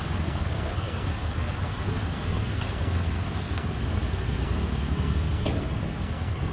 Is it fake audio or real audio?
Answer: fake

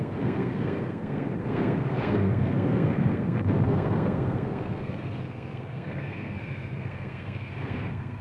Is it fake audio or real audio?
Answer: fake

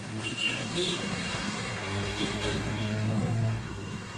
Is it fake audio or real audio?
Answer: fake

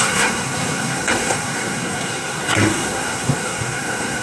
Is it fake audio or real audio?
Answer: fake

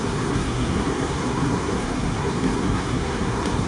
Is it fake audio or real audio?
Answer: fake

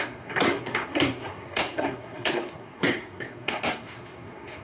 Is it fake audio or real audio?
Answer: fake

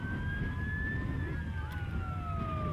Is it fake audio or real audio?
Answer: real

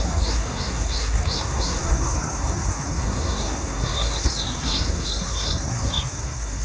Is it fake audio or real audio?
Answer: fake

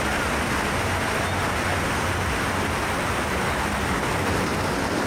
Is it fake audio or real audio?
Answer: real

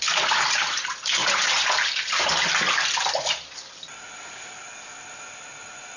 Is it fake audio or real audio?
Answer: real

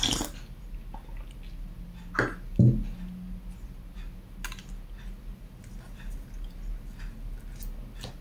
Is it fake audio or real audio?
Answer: real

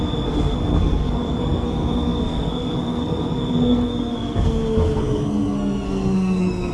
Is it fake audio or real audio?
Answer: fake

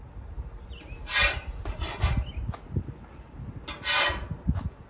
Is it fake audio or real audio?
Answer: real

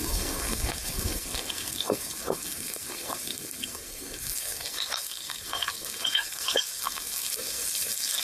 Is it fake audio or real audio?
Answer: fake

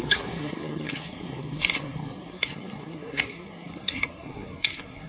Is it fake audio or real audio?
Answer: fake